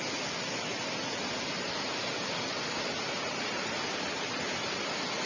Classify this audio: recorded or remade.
recorded